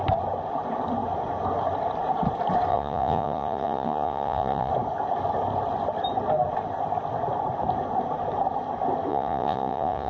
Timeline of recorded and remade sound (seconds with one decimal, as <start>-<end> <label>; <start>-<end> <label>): 0.0-2.7 recorded; 2.7-4.7 remade; 4.7-9.1 recorded; 9.1-10.1 remade